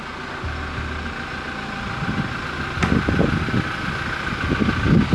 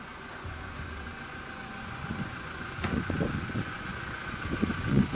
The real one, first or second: first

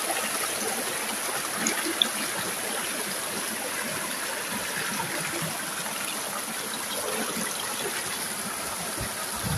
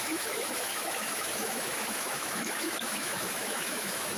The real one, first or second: first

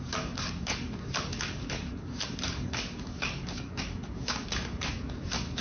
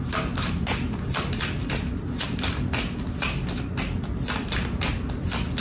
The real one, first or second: second